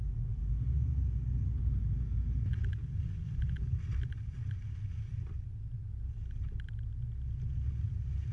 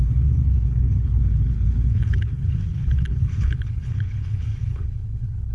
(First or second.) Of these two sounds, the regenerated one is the second